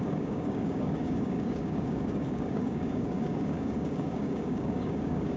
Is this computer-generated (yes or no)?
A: yes